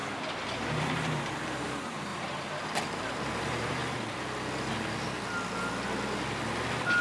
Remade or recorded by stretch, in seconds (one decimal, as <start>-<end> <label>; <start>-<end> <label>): 0.0-0.8 recorded; 0.8-3.8 remade; 3.8-7.0 recorded